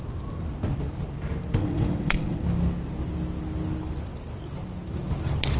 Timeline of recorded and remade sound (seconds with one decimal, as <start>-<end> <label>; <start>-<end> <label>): 0.0-1.6 recorded; 1.6-2.4 remade; 2.4-5.6 recorded